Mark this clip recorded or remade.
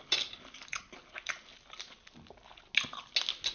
recorded